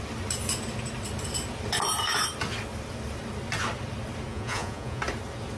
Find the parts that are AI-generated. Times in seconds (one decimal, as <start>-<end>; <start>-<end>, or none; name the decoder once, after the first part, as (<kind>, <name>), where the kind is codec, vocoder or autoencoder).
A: 4.3-5.0 (vocoder, Vocos)